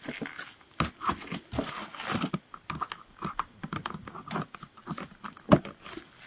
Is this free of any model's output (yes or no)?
yes